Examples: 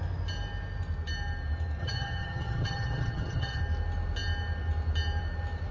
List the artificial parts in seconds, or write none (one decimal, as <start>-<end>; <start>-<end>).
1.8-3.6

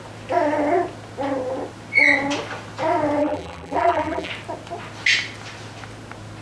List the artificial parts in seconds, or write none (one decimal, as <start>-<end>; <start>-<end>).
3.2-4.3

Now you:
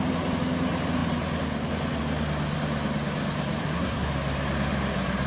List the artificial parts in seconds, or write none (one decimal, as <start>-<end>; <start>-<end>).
3.6-4.1

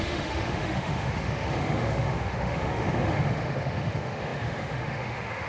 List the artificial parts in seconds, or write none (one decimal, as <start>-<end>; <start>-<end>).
0.0-5.5

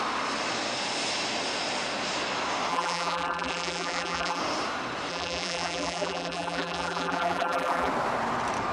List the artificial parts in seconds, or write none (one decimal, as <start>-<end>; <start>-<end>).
2.7-4.4; 5.1-7.9

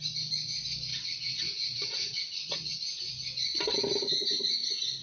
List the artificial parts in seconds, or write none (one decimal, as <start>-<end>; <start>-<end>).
0.9-2.7

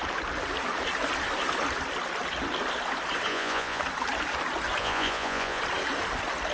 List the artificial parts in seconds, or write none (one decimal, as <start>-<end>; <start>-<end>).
3.3-3.8; 4.8-5.6

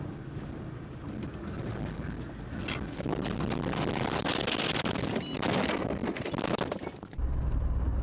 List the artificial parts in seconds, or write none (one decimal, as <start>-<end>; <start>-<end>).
none